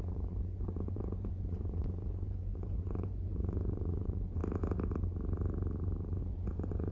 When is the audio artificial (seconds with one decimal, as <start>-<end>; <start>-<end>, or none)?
0.0-4.4; 6.2-6.9